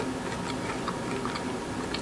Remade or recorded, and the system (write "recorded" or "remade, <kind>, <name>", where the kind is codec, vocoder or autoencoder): recorded